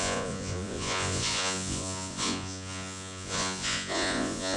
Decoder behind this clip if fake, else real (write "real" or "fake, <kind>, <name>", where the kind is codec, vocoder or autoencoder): fake, vocoder, Vocos